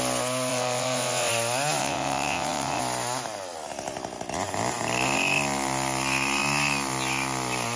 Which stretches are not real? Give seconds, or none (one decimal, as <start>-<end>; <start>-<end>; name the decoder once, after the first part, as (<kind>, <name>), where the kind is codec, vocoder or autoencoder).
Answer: 0.5-1.3 (vocoder, WaveNeXt); 1.8-2.8